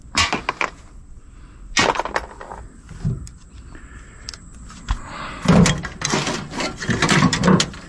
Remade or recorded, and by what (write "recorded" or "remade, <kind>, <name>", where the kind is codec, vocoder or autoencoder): recorded